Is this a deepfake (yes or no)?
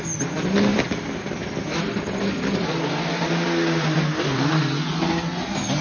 no